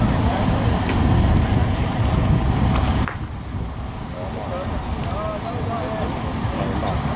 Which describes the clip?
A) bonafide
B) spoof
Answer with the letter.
A